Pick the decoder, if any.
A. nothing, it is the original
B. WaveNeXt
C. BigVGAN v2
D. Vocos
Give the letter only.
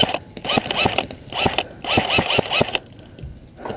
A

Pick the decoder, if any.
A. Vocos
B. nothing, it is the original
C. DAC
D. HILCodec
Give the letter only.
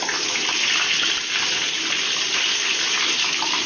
B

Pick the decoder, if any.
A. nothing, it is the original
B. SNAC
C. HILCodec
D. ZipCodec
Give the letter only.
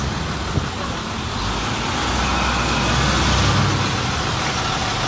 A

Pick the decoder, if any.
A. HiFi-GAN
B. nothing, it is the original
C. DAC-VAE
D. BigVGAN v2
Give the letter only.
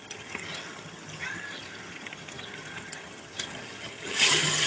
A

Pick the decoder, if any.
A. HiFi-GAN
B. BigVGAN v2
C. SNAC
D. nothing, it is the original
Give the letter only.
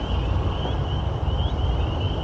D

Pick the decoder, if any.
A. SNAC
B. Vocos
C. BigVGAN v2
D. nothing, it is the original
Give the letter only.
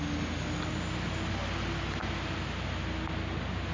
D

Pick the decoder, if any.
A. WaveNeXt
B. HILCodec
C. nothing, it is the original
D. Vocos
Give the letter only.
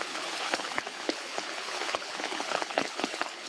B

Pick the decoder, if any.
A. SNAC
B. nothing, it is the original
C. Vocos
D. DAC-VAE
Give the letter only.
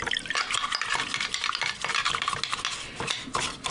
B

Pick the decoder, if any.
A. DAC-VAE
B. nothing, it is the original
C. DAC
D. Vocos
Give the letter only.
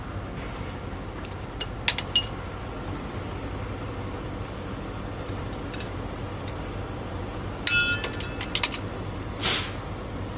B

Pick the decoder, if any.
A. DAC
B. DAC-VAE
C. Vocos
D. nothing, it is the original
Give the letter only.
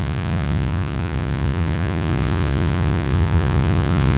C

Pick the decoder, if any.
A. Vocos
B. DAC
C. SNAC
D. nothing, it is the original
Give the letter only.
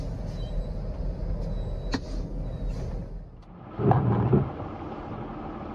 D